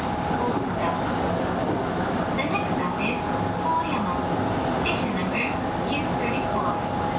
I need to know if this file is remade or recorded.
recorded